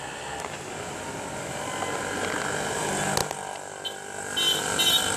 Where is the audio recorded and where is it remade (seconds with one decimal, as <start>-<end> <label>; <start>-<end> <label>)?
0.0-5.2 recorded